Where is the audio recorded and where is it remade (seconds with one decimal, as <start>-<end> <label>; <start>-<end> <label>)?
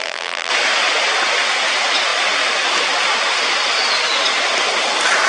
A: 0.0-0.5 remade; 0.5-5.3 recorded